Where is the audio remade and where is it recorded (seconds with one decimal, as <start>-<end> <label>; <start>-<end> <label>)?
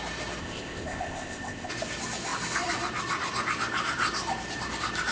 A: 0.0-0.4 recorded; 0.4-1.7 remade; 1.7-5.1 recorded